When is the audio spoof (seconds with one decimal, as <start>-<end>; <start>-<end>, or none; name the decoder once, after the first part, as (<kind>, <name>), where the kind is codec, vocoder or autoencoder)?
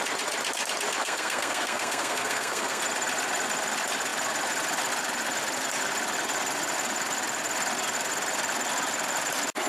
1.0-2.8 (codec, SNAC)